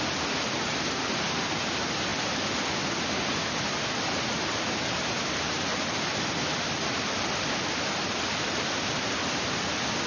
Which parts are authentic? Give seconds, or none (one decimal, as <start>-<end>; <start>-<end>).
0.0-10.1